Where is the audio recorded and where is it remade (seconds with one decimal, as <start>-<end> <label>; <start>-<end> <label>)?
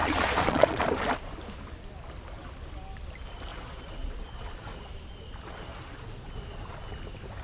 0.0-0.8 remade; 0.8-3.5 recorded; 3.5-4.9 remade; 4.9-5.7 recorded; 5.7-6.7 remade; 6.7-7.4 recorded